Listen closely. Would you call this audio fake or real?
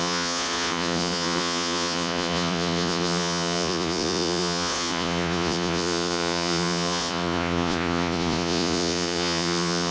fake